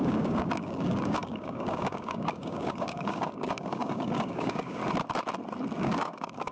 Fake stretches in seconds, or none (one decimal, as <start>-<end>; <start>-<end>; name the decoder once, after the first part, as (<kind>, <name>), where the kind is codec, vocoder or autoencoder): 0.0-4.8 (codec, DAC); 5.8-6.5